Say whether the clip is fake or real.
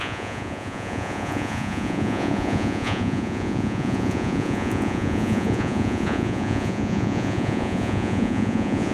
fake